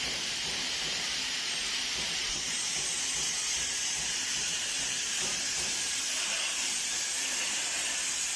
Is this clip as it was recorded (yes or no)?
no